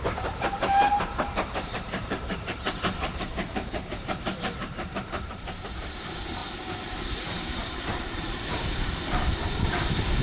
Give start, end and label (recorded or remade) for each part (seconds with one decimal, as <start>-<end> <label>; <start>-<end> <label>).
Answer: 0.0-6.4 remade; 6.4-6.9 recorded; 6.9-10.2 remade